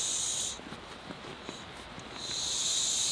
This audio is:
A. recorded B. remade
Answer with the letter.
A